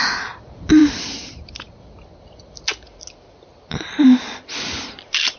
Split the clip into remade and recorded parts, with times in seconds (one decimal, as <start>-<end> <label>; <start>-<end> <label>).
0.0-5.4 recorded

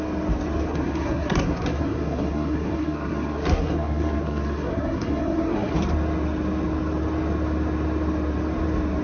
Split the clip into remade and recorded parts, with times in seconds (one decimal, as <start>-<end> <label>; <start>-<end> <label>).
0.0-0.7 recorded; 0.7-5.7 remade; 5.7-9.0 recorded

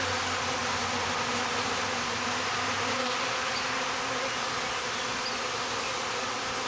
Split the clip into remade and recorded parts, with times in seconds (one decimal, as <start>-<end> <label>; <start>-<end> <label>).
0.0-6.7 recorded

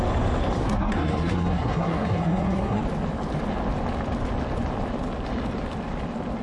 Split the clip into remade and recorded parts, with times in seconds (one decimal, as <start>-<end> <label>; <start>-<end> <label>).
0.0-0.6 recorded; 0.6-2.8 remade; 2.8-6.4 recorded

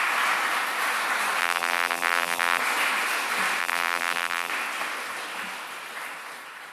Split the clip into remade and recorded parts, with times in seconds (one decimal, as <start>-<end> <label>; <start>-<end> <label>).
0.0-1.4 recorded; 1.4-2.6 remade; 2.6-3.6 recorded; 3.6-4.5 remade; 4.5-6.7 recorded

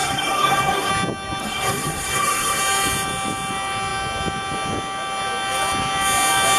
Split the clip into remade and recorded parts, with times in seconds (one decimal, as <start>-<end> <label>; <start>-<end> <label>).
0.0-0.9 remade; 0.9-1.4 recorded; 1.4-2.6 remade; 2.6-6.6 recorded